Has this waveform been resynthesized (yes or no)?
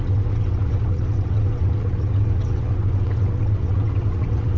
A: yes